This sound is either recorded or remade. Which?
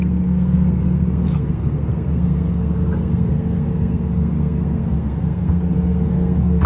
remade